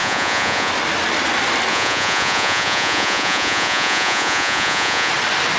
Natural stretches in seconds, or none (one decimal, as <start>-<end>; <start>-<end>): 0.7-1.7; 5.1-5.6